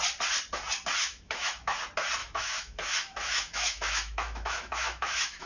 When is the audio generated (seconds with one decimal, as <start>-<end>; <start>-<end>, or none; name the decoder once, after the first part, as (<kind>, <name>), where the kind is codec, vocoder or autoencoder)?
1.0-1.8 (autoencoder, DAC-VAE); 2.2-5.5